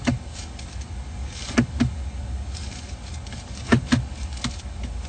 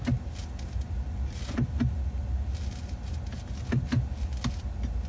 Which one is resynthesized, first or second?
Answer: first